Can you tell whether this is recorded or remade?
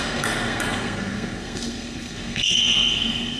remade